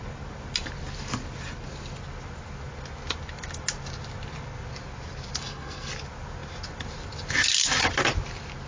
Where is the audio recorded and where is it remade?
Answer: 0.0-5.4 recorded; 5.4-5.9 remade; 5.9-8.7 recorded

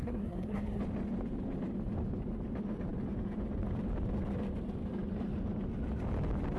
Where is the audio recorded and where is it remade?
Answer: 0.0-0.8 remade; 0.8-6.6 recorded

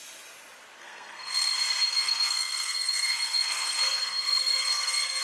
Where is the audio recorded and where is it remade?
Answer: 0.0-0.8 recorded; 0.8-1.5 remade; 1.5-1.9 recorded; 1.9-5.2 remade

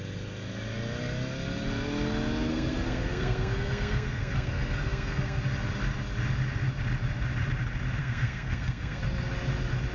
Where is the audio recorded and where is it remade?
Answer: 0.0-2.5 recorded; 2.5-5.4 remade; 5.4-8.0 recorded; 8.0-9.0 remade; 9.0-9.9 recorded

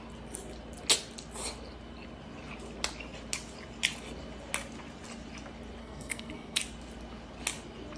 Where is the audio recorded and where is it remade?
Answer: 0.0-5.8 recorded; 5.8-6.6 remade; 6.6-8.0 recorded